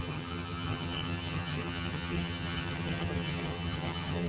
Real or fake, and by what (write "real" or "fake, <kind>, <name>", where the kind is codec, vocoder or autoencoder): fake, vocoder, HiFi-GAN